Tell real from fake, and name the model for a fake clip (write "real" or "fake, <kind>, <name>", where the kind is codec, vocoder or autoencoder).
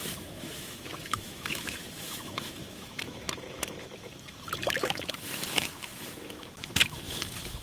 fake, autoencoder, DAC-VAE